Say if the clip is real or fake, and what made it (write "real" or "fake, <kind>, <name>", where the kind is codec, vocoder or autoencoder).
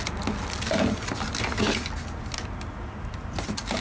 real